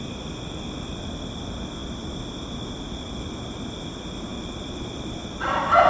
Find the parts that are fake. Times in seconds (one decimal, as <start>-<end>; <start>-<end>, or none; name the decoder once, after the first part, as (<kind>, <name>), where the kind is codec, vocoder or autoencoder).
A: none